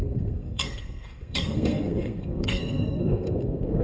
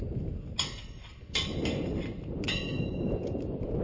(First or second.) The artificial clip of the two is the first